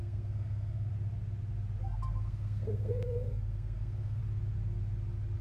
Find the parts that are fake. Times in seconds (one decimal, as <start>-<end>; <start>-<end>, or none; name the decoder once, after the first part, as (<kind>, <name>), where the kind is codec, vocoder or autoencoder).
0.0-0.9 (codec, SNAC); 1.8-4.2